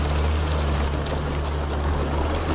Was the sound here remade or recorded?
recorded